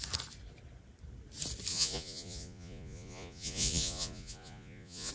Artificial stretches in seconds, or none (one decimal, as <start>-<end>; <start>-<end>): 1.7-5.1